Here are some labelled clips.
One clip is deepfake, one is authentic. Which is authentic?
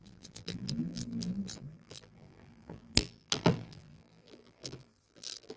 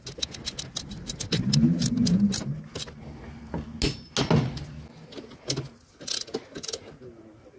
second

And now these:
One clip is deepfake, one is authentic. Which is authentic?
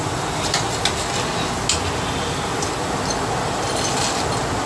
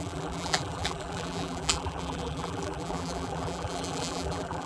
first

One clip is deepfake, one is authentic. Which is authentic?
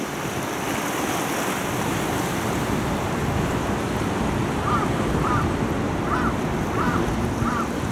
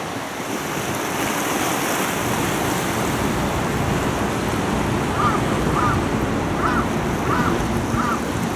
second